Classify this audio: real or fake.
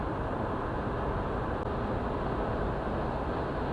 real